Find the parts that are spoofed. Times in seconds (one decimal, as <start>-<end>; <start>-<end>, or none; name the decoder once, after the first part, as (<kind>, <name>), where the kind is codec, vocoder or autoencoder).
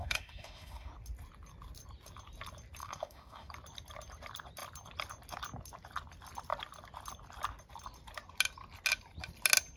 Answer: 0.0-0.9 (autoencoder, DAC-VAE); 2.8-3.5